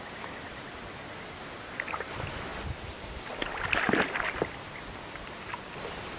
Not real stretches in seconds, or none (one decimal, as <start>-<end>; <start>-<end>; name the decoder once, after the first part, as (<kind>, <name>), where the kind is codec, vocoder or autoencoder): none